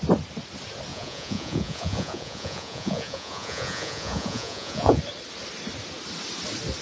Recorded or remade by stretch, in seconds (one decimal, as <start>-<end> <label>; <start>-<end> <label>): 0.0-0.9 recorded; 0.9-5.0 remade; 5.0-6.8 recorded